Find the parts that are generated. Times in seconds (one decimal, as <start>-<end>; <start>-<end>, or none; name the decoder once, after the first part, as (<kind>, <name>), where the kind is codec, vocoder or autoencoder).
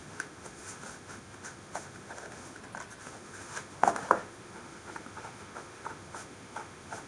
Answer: 0.0-2.6 (autoencoder, DAC-VAE); 3.0-7.1